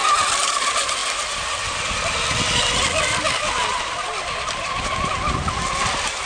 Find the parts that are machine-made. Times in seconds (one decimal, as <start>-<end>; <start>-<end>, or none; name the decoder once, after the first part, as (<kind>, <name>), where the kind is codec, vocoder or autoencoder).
none